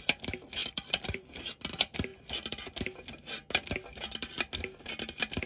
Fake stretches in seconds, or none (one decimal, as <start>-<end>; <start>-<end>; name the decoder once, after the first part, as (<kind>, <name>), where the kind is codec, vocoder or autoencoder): 0.6-1.4 (vocoder, BigVGAN v2)